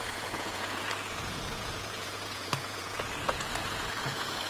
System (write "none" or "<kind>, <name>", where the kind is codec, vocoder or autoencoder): vocoder, Vocos